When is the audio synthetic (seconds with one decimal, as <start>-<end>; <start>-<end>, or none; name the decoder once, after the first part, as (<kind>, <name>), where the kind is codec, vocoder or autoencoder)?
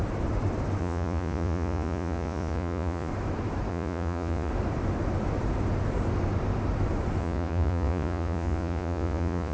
0.8-3.1 (vocoder, Vocos); 3.7-4.5; 7.2-9.5